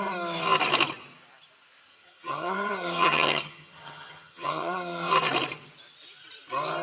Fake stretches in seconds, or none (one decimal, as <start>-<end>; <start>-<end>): 1.9-5.1